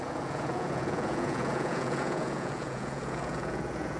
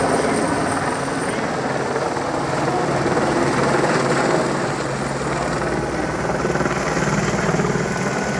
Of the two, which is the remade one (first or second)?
first